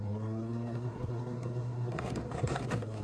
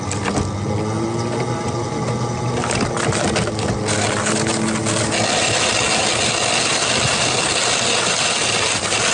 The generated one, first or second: first